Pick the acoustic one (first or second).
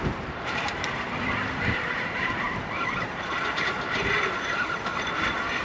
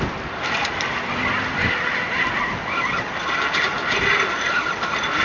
second